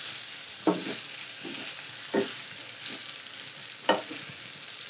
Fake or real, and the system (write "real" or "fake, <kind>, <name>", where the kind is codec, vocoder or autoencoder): real